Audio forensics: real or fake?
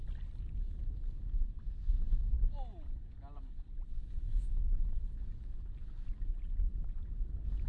real